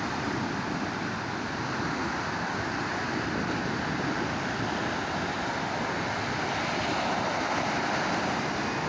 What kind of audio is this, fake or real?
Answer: real